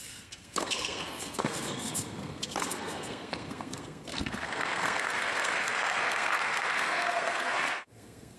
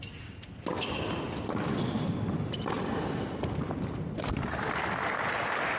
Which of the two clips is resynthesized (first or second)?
first